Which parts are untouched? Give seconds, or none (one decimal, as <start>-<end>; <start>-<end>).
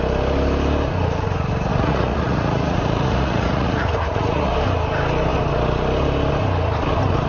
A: 0.0-1.7; 4.5-7.3